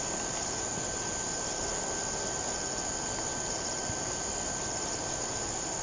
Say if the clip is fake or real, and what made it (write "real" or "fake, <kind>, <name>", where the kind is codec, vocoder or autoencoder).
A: real